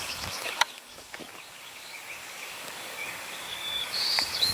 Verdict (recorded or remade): remade